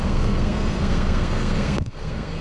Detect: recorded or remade remade